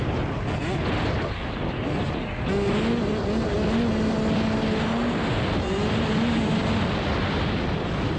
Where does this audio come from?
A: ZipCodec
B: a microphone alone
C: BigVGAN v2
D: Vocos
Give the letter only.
B